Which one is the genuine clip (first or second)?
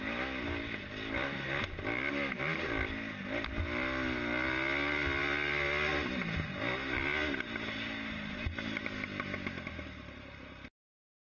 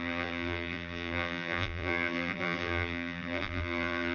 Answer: first